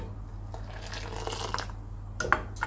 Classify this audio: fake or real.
real